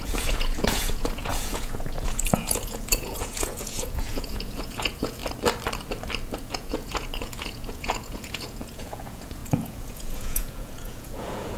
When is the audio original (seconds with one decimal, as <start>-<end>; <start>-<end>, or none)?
5.2-6.4